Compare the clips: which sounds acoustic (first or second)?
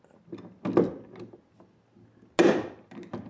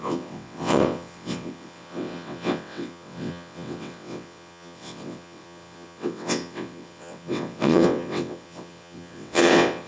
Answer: first